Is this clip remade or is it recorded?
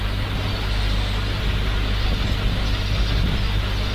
recorded